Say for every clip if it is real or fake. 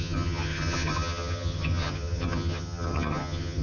fake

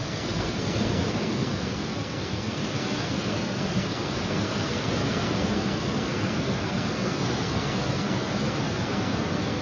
fake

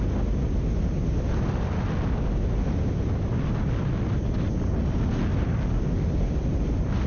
real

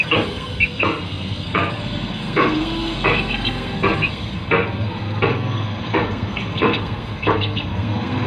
fake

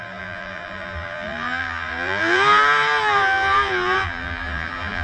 fake